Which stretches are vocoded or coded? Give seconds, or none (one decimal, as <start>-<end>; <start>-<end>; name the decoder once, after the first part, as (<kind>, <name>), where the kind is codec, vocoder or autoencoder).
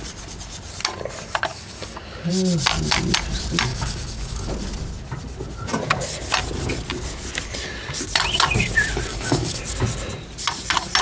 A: 1.5-2.3 (codec, DAC); 3.7-4.5; 9.1-9.6